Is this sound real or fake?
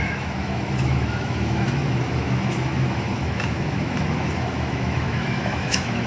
fake